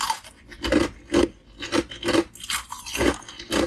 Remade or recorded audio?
recorded